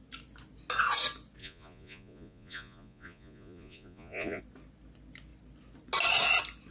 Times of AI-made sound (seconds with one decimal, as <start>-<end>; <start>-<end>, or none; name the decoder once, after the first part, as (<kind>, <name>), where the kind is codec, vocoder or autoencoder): 1.4-4.4 (vocoder, Vocos)